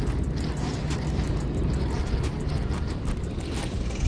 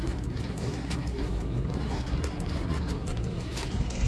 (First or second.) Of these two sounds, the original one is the first